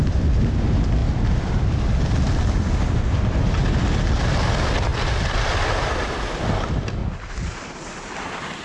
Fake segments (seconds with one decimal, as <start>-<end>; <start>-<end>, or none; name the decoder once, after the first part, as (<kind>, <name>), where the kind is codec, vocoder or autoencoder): 4.9-5.7 (vocoder, BigVGAN v2); 7.0-8.2